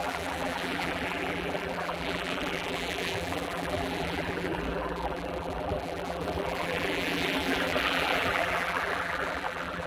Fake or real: fake